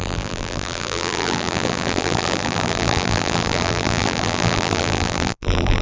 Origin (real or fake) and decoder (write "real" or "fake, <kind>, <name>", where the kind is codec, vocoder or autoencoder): fake, vocoder, BigVGAN v2